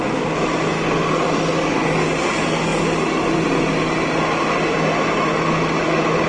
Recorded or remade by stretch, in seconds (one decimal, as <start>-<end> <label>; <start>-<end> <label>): 0.0-6.3 recorded